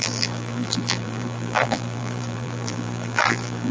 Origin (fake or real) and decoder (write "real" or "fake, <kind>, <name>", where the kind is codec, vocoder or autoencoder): fake, vocoder, BigVGAN v2